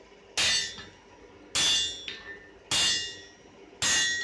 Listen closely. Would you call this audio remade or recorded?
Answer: recorded